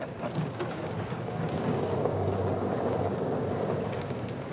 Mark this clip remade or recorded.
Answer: remade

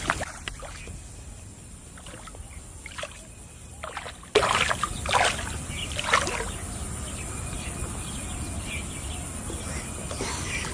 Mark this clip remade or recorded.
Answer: recorded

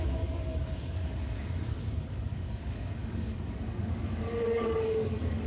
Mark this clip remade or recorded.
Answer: remade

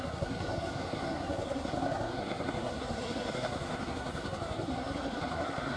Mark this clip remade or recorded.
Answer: remade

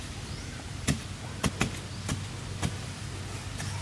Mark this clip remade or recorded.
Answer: recorded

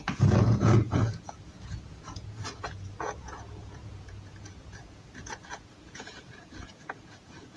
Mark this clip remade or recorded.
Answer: remade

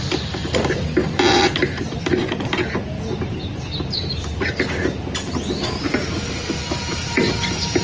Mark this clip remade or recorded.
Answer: recorded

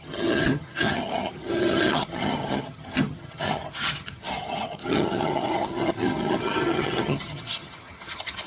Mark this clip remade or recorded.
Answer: remade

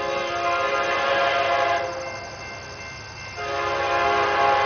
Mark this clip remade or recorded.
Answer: recorded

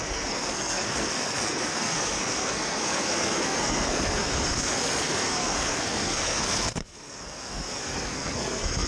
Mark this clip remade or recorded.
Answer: remade